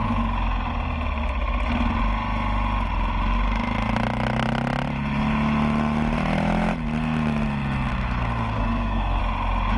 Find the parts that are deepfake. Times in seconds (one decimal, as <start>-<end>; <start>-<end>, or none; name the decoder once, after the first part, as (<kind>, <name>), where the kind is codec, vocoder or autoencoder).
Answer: 7.9-9.2 (codec, SNAC)

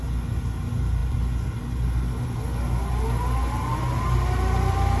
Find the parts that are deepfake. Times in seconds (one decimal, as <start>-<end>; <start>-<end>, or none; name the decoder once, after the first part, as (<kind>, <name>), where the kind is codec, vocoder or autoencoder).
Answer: none

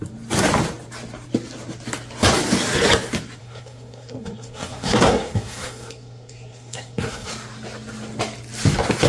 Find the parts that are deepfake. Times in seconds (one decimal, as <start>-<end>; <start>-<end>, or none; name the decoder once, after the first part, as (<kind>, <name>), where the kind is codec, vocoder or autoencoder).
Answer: 3.4-7.3 (codec, SNAC)